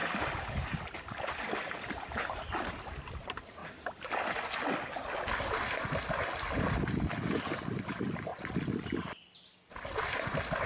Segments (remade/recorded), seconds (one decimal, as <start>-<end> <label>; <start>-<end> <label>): 0.0-3.0 remade; 3.0-3.6 recorded; 3.6-5.3 remade; 5.3-10.7 recorded